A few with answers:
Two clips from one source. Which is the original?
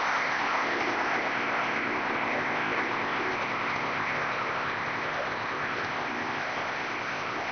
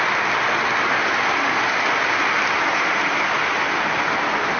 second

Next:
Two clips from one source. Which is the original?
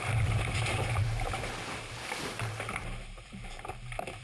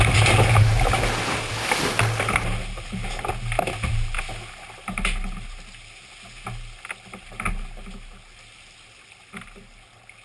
second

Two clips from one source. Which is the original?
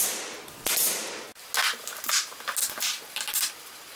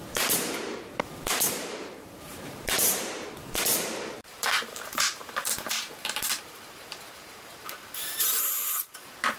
first